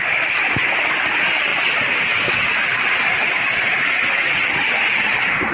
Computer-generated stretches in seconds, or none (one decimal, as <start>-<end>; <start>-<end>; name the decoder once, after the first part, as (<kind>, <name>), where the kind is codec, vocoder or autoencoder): none